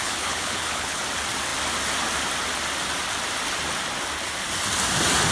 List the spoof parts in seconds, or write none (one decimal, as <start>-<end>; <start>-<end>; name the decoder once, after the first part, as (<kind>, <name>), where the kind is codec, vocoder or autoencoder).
0.0-1.0 (codec, HILCodec)